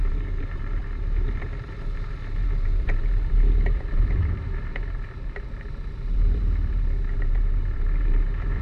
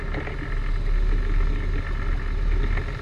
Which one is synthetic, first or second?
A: first